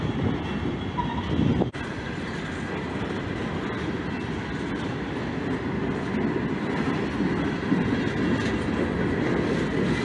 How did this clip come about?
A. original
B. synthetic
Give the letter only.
A